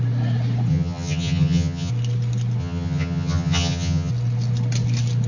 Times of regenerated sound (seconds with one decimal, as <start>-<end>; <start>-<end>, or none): 0.7-1.9; 2.6-4.1